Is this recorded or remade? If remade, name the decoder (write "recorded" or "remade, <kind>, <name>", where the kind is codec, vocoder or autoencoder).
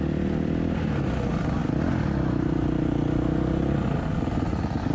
recorded